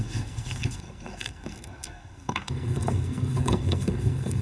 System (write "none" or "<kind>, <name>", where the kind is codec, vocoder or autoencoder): codec, SNAC